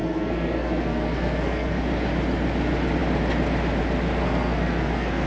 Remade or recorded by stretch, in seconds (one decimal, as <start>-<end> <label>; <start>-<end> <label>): 0.0-1.8 remade; 1.8-4.2 recorded; 4.2-5.3 remade